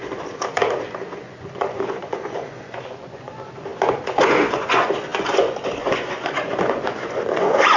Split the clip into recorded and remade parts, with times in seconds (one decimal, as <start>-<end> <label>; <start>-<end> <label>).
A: 0.0-7.8 remade

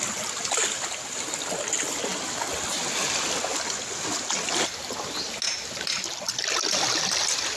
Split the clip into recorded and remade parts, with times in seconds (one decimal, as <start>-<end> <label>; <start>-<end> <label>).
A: 0.0-7.6 recorded

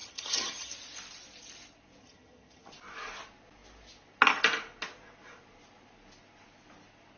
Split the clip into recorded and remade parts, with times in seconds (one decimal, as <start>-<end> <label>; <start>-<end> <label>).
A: 0.0-0.7 remade; 0.7-2.0 recorded; 2.0-2.7 remade; 2.7-7.2 recorded

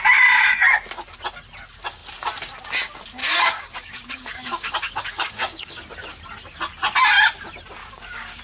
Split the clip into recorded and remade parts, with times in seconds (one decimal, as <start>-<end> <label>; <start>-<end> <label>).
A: 0.0-3.2 recorded; 3.2-5.8 remade; 5.8-7.8 recorded; 7.8-8.4 remade

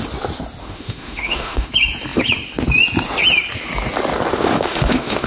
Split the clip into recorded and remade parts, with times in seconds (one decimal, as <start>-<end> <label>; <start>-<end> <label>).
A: 0.0-0.6 recorded; 0.6-1.7 remade; 1.7-4.3 recorded; 4.3-5.3 remade

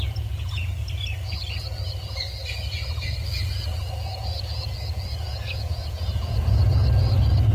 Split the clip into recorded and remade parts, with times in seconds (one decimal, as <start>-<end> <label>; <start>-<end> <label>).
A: 0.0-0.8 remade; 0.8-5.3 recorded; 5.3-6.8 remade; 6.8-7.5 recorded

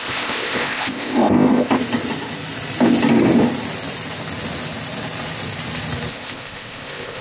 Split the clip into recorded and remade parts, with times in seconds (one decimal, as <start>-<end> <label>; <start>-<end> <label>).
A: 0.0-1.8 remade; 1.8-6.1 recorded; 6.1-7.2 remade